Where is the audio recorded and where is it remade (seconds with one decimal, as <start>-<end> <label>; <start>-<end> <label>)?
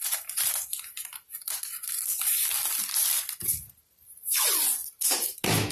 0.0-3.1 recorded; 3.1-3.6 remade; 3.6-5.7 recorded